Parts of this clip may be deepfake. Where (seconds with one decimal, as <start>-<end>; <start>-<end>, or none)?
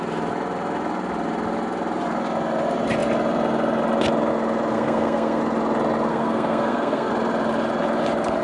4.7-5.4; 6.1-7.1